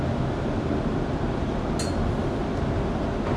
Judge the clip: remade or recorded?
recorded